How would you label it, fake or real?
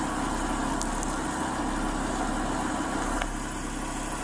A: real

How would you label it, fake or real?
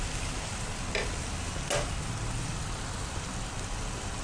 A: real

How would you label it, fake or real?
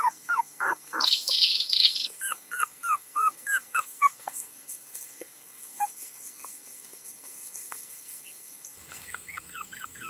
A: fake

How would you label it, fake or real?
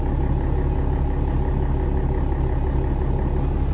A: real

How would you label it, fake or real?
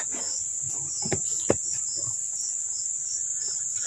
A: real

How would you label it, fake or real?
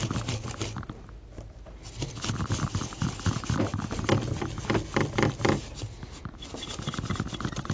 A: real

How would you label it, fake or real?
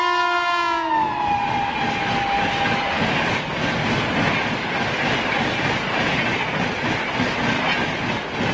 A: real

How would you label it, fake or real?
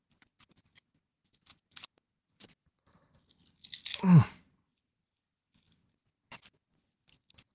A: real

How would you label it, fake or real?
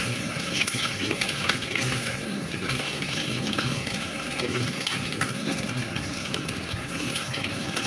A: fake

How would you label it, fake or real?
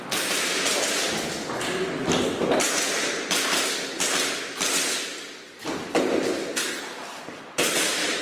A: real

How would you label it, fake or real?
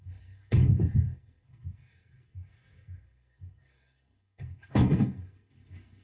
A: fake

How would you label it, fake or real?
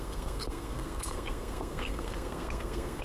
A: fake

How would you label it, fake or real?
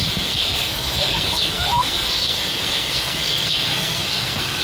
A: fake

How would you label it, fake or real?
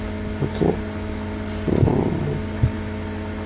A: real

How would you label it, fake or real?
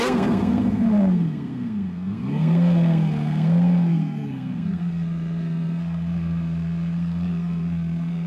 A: fake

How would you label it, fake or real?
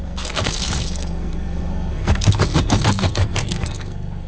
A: fake